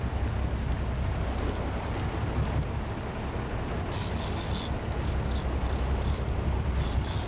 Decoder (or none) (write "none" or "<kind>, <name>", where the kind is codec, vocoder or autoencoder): none